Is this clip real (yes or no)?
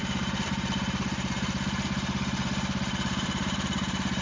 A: no